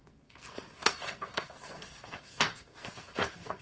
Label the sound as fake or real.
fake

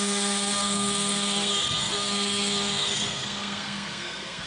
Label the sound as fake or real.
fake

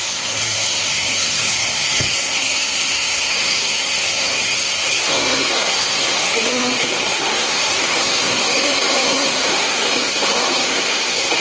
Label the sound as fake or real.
fake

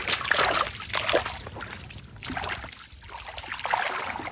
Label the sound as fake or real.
real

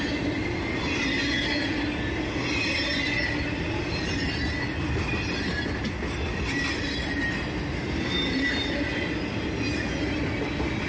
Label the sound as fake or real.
real